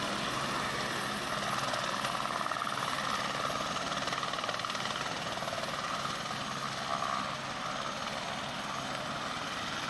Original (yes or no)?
yes